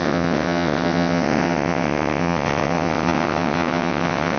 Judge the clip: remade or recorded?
remade